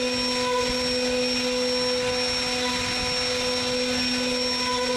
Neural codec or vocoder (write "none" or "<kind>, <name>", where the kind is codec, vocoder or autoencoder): none